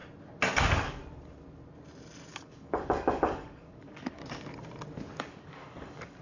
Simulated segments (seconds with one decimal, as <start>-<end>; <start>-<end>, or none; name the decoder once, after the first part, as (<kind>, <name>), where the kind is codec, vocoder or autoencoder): 0.6-1.0 (codec, DAC); 2.3-4.2; 5.2-6.2